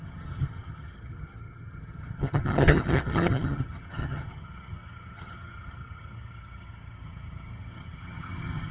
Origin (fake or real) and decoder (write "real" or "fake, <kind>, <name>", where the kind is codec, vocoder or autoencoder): fake, vocoder, HiFi-GAN